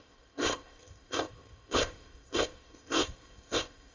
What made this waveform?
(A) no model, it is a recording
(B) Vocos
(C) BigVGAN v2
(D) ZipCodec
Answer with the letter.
D